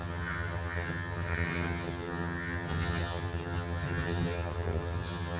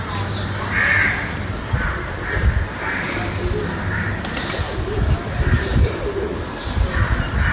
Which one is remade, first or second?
first